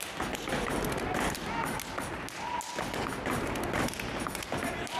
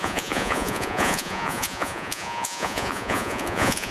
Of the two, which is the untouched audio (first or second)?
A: first